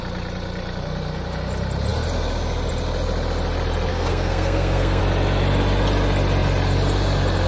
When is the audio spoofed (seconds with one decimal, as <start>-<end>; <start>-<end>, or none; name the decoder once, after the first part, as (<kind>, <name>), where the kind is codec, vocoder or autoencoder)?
3.9-5.0 (codec, SNAC)